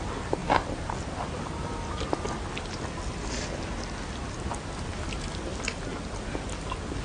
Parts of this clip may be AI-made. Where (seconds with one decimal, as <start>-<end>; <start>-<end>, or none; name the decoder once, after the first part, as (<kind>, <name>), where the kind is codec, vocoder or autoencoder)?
none